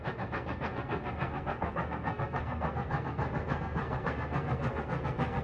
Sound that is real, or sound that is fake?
fake